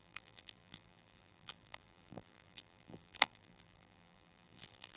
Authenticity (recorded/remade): remade